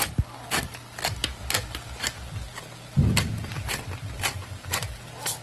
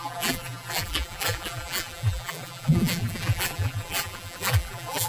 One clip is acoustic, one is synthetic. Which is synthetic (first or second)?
second